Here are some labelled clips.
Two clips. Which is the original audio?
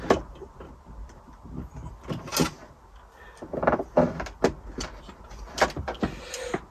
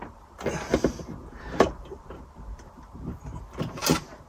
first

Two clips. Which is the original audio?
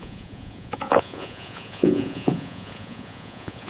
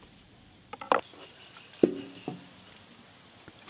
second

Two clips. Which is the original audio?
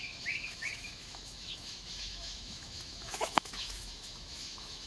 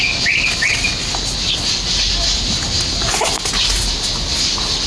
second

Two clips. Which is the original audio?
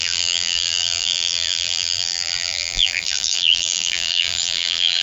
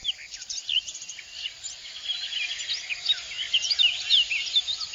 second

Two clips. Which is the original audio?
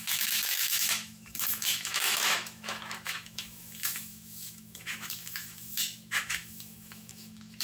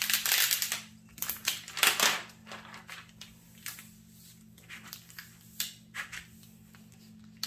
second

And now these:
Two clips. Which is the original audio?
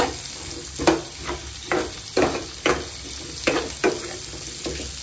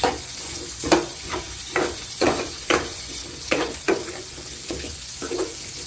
first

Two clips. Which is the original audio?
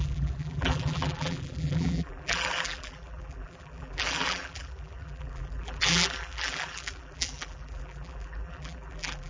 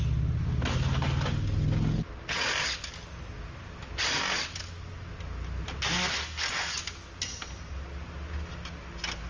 second